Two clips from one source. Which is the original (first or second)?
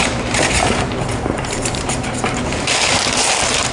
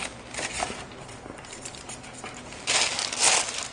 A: second